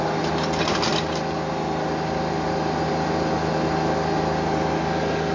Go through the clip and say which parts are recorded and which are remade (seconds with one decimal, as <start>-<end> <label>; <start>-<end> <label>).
0.0-5.3 recorded